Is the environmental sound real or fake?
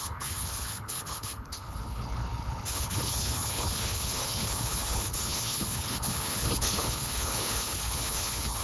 fake